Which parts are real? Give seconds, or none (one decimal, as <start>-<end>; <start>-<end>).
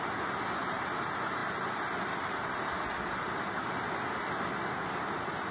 0.0-5.5